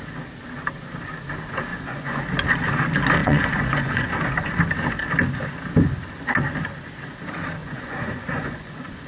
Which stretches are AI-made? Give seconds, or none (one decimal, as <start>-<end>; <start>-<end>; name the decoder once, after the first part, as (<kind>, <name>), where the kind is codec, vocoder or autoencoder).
1.7-2.2 (vocoder, Vocos); 3.2-4.1; 7.6-9.1